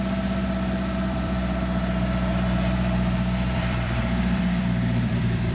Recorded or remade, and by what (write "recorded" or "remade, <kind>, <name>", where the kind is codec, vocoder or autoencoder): remade, vocoder, BigVGAN v2